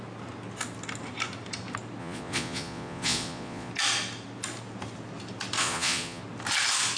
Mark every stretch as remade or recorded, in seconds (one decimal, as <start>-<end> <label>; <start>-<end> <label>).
0.0-2.0 recorded; 2.0-3.7 remade; 3.7-5.6 recorded; 5.6-6.2 remade; 6.2-7.0 recorded